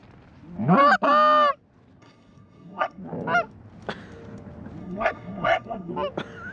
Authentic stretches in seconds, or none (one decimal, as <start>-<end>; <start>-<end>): 0.0-2.0; 3.0-4.8; 5.9-6.5